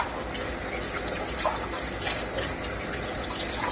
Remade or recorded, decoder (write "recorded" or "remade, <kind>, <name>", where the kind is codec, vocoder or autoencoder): recorded